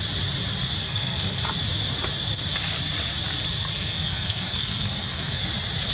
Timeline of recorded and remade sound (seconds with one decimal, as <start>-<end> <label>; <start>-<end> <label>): 0.0-0.8 recorded; 0.8-1.4 remade; 1.4-3.7 recorded; 3.7-5.4 remade; 5.4-5.9 recorded